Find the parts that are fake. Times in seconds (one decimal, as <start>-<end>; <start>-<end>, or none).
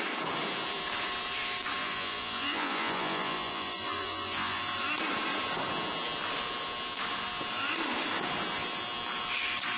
1.8-4.6